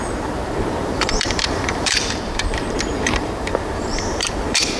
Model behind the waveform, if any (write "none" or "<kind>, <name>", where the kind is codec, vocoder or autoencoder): vocoder, BigVGAN v2